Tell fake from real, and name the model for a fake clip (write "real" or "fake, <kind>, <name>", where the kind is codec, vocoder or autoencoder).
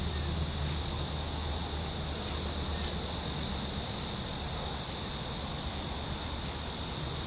real